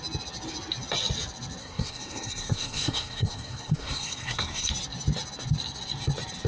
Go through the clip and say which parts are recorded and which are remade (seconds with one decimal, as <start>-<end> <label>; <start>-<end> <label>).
0.0-1.6 recorded; 1.6-4.7 remade; 4.7-6.5 recorded

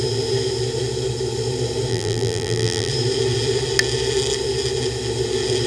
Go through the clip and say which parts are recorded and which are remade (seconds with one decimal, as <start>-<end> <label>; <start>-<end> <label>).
0.0-1.9 recorded; 1.9-2.9 remade; 2.9-5.7 recorded

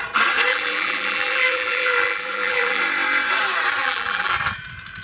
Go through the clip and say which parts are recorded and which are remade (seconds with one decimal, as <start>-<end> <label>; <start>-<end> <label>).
0.0-0.5 recorded; 0.5-2.8 remade; 2.8-3.8 recorded; 3.8-4.3 remade; 4.3-5.0 recorded

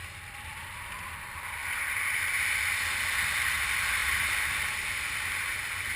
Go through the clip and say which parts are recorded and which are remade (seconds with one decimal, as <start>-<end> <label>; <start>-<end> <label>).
0.0-6.0 recorded

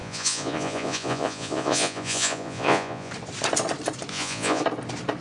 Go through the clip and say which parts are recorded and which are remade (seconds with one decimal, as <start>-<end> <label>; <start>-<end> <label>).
0.0-3.1 remade; 3.1-4.1 recorded; 4.1-4.6 remade; 4.6-5.2 recorded